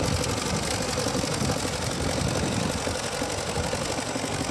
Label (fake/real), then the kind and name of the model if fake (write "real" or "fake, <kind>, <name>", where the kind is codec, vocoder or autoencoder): real